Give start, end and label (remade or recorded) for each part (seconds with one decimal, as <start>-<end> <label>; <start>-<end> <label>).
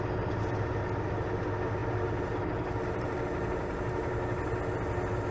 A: 0.0-5.3 recorded